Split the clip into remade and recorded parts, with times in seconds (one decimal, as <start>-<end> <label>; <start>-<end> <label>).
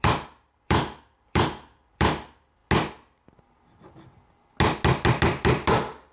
0.0-2.6 remade; 2.6-5.2 recorded; 5.2-6.1 remade